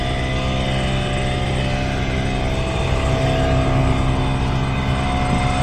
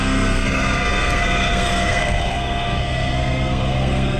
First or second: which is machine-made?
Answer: second